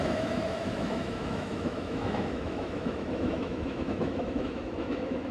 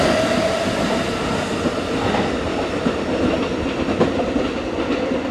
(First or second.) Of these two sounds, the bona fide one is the second